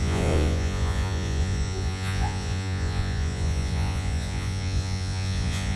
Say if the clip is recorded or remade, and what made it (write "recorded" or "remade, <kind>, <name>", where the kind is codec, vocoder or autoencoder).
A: remade, vocoder, Vocos